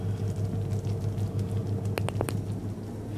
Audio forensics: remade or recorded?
recorded